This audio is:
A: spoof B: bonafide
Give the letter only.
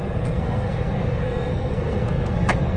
A